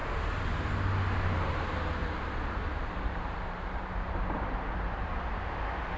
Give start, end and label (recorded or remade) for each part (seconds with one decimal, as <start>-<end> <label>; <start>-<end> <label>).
0.0-2.0 recorded; 2.0-5.2 remade; 5.2-6.0 recorded